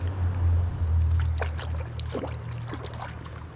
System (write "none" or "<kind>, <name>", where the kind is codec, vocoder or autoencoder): none